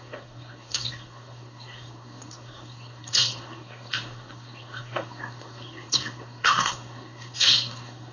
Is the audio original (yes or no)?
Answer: no